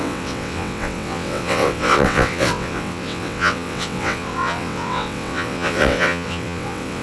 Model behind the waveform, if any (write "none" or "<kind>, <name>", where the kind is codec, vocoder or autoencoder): vocoder, WaveNeXt